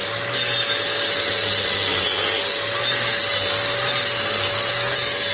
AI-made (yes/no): no